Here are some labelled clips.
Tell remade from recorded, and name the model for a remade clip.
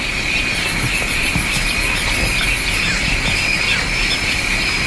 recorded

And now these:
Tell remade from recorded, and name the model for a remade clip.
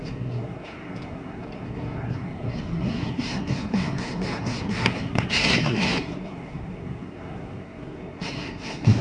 remade, codec, SNAC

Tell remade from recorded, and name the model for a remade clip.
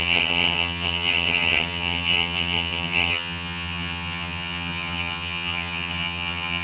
remade, vocoder, HiFi-GAN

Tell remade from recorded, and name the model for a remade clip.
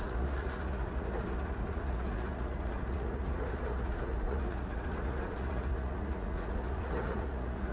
remade, vocoder, Vocos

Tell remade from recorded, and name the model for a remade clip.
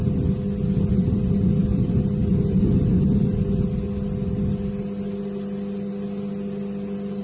recorded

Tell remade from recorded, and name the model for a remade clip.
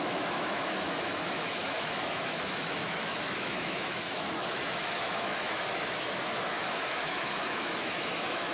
remade, autoencoder, DAC-VAE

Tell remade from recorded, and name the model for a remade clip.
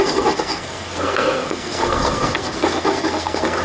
remade, codec, SNAC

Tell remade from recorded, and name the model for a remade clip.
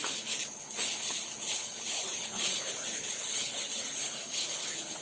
remade, codec, HILCodec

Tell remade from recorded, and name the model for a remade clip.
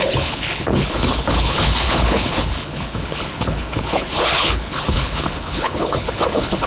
remade, codec, HILCodec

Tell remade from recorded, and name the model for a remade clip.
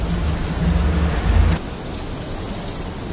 recorded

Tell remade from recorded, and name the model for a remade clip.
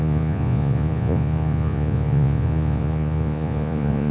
remade, vocoder, Vocos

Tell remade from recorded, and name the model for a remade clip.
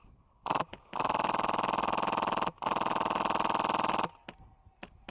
recorded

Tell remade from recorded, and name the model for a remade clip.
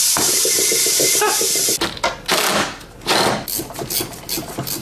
recorded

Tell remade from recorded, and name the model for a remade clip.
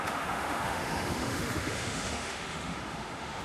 remade, autoencoder, DAC-VAE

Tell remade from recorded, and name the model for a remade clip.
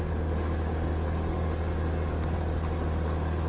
recorded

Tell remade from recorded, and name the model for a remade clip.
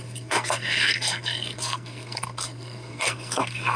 remade, codec, SNAC